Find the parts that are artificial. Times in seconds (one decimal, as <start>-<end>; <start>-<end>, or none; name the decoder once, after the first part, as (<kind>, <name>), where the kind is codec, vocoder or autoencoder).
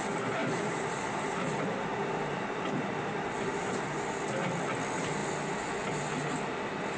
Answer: 0.4-4.0 (vocoder, BigVGAN v2)